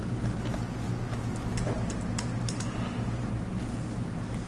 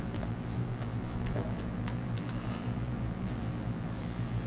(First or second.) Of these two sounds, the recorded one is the first